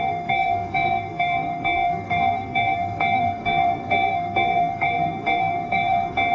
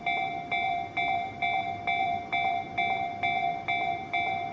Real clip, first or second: second